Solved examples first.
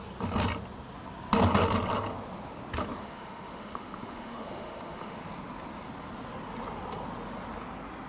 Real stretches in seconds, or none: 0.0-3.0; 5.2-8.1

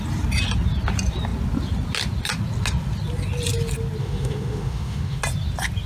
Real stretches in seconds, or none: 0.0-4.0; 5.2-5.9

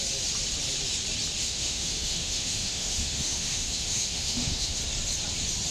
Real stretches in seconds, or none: 0.0-1.4; 4.8-5.7

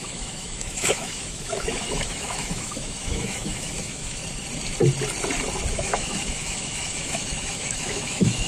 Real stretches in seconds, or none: 4.2-5.7

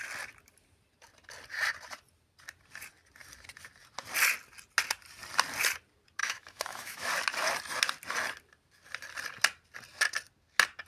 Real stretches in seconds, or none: 0.0-6.2; 7.1-10.9

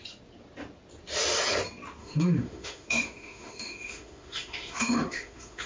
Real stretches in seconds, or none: 0.0-2.0

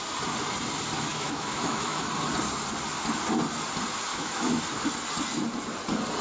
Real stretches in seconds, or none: 0.0-1.1; 2.1-4.1; 4.6-6.2

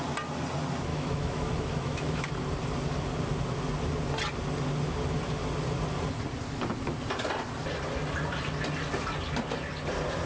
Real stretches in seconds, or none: 0.0-0.9; 2.3-10.3